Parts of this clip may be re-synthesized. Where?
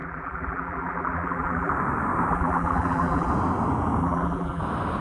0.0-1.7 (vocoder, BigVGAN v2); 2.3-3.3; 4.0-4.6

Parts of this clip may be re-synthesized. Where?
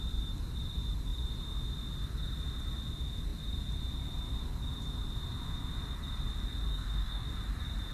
6.7-7.3 (codec, DAC)